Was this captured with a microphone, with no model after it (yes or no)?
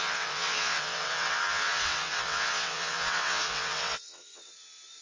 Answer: no